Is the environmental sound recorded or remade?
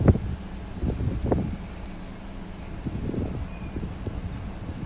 recorded